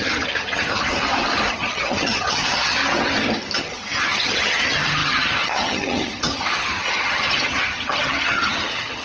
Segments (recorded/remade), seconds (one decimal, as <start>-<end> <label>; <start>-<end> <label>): 0.0-0.9 remade; 0.9-1.5 recorded; 1.5-2.8 remade; 2.8-3.6 recorded; 3.6-9.0 remade